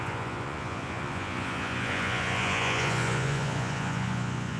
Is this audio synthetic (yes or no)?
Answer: yes